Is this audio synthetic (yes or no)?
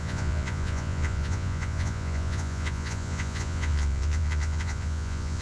yes